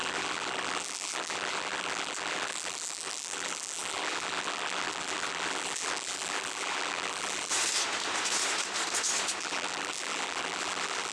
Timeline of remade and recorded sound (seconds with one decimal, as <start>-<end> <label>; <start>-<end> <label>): 0.0-7.5 remade; 7.5-9.4 recorded; 9.4-11.1 remade